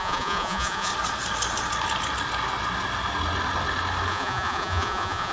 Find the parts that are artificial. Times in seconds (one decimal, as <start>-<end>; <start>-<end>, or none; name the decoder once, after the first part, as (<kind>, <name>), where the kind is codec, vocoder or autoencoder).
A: 0.0-0.9 (vocoder, Vocos); 4.1-5.3

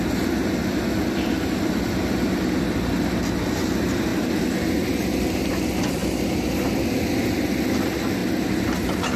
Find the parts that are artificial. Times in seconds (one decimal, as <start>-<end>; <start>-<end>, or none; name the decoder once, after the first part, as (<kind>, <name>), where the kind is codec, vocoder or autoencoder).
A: 0.6-3.1 (vocoder, BigVGAN v2); 4.1-5.5; 6.0-6.8; 8.2-9.2

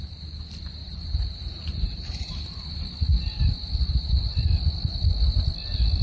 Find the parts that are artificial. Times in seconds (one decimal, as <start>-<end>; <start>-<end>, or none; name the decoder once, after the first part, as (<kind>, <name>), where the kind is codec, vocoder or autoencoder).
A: 0.8-2.5 (vocoder, BigVGAN v2)

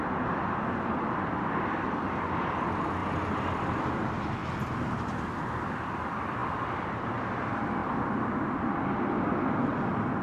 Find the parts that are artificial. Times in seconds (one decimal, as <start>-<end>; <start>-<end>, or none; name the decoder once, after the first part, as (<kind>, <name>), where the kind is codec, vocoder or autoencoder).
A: none

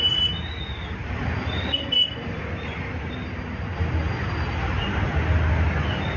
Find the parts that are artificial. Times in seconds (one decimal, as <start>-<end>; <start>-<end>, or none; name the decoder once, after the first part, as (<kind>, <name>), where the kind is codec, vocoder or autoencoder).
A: none